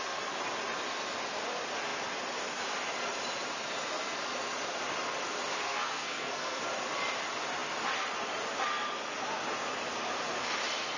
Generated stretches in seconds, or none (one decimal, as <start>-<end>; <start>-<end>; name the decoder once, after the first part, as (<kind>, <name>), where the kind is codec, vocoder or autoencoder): 5.6-6.6 (codec, SNAC)